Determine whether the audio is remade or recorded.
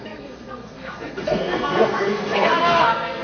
remade